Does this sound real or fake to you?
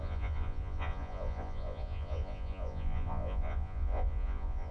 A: fake